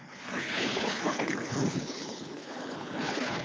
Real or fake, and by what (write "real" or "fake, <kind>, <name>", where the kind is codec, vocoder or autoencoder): fake, codec, HILCodec